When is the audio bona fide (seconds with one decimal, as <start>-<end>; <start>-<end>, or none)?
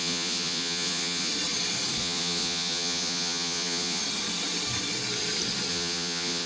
1.3-2.0; 4.0-5.7